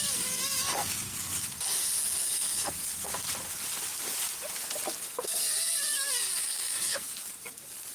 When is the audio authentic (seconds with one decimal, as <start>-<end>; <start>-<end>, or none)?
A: 3.1-5.0